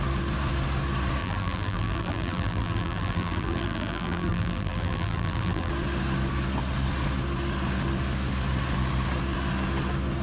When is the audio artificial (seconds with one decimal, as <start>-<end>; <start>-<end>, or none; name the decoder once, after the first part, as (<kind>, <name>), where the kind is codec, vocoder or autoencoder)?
1.2-5.7 (vocoder, BigVGAN v2)